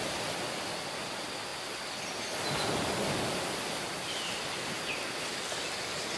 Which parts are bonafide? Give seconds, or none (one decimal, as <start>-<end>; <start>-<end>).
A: 0.0-6.2